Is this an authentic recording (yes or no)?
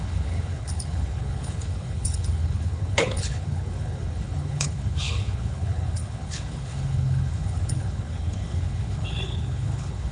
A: no